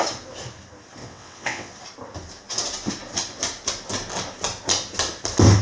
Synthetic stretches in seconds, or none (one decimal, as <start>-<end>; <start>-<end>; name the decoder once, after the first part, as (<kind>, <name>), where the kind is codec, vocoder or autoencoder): 1.0-1.7 (vocoder, WaveNeXt)